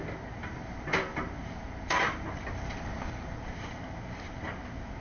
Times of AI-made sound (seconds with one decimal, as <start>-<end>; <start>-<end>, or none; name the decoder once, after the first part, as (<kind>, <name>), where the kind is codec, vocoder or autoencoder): 0.4-3.4 (vocoder, BigVGAN v2)